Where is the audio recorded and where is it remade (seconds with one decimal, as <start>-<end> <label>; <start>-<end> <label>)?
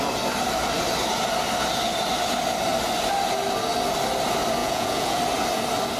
0.0-4.6 recorded; 4.6-5.2 remade; 5.2-6.0 recorded